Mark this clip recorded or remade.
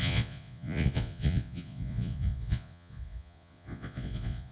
remade